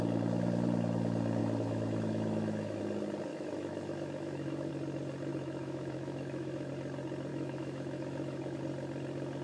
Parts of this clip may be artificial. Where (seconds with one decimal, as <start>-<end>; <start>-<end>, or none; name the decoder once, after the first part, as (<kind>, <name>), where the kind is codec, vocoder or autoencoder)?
1.4-2.8 (autoencoder, DAC-VAE); 3.3-4.7; 5.3-6.7; 7.3-8.6